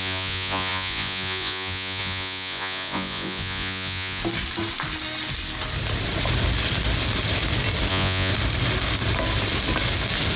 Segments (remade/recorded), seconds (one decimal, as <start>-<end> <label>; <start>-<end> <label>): 0.0-4.2 remade; 4.2-7.9 recorded; 7.9-8.3 remade; 8.3-10.4 recorded